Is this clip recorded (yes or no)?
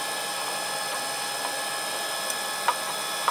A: yes